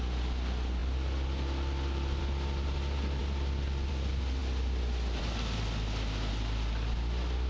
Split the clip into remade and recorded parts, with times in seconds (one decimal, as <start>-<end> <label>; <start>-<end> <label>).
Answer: 0.0-7.5 recorded